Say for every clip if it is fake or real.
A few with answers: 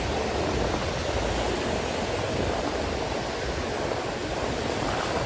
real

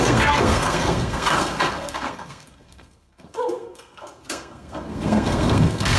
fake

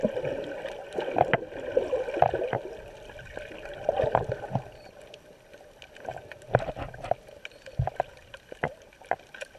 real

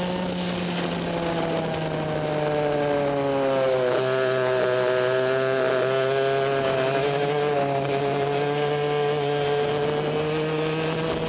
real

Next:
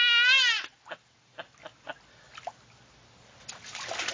real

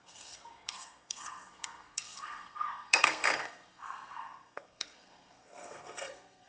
fake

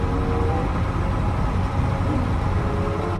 real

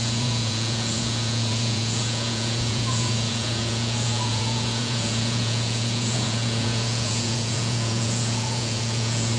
fake